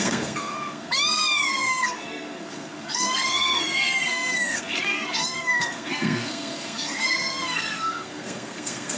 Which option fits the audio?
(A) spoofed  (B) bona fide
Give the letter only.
A